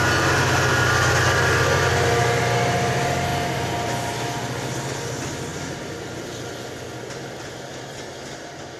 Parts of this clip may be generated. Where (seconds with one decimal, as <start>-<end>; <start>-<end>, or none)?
none